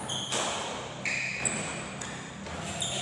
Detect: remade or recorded recorded